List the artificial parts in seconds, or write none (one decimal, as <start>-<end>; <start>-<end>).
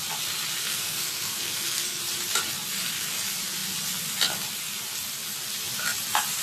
0.6-2.0